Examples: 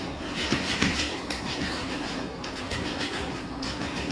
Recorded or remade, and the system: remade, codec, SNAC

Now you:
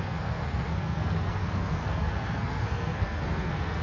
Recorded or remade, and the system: remade, codec, SNAC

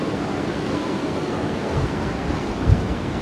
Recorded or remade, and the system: remade, codec, SNAC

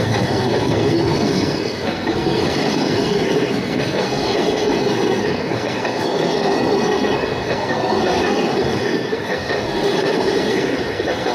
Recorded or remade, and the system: remade, codec, SNAC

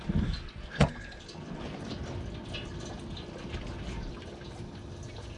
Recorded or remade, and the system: recorded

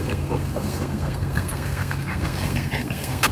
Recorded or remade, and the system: remade, codec, SNAC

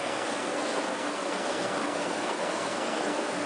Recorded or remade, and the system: remade, codec, SNAC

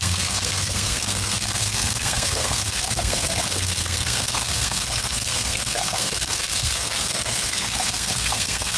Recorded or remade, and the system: remade, codec, SNAC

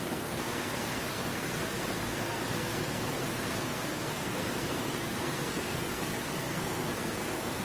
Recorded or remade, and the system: remade, codec, SNAC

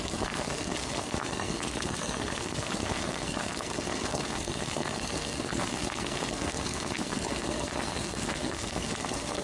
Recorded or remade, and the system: remade, codec, SNAC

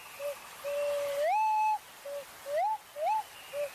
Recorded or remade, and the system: recorded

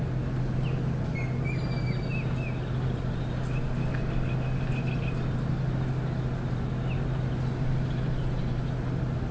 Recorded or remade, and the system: recorded